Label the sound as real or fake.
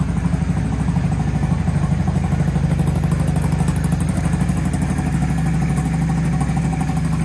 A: real